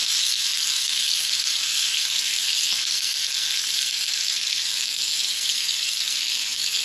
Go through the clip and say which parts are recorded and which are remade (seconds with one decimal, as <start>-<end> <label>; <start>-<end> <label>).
0.0-6.8 remade

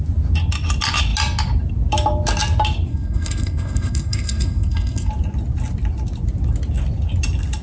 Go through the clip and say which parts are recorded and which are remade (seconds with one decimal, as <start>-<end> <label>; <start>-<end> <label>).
0.0-2.9 recorded; 2.9-5.1 remade; 5.1-7.6 recorded